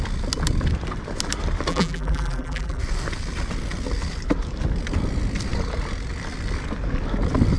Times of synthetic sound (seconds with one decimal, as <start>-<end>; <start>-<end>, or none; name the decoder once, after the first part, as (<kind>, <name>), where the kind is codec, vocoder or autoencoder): 1.7-2.8 (vocoder, BigVGAN v2)